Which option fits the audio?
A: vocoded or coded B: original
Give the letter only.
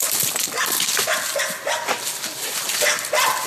B